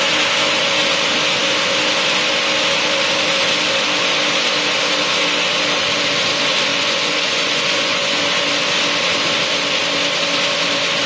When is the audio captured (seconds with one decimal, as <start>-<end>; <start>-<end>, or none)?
0.0-6.7; 8.2-11.1